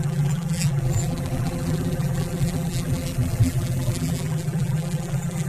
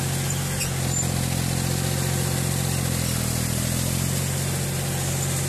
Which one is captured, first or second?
second